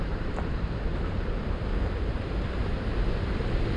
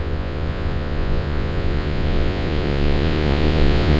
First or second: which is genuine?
first